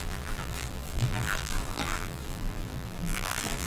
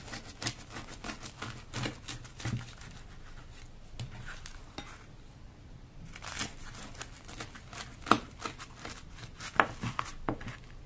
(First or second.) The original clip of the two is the second